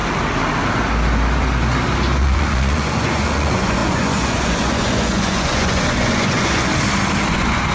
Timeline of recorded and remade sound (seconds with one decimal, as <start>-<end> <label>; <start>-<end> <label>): 0.0-2.2 recorded; 2.2-6.7 remade; 6.7-7.3 recorded; 7.3-7.7 remade